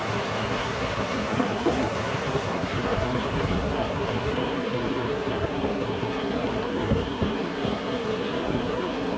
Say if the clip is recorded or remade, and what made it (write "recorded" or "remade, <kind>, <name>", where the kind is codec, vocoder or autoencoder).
remade, codec, SNAC